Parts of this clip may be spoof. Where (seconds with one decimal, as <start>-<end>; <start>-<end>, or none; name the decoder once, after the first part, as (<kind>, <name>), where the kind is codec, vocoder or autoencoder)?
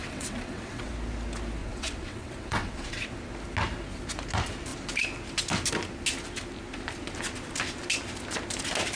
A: 0.0-0.9 (vocoder, WaveNeXt); 1.6-3.1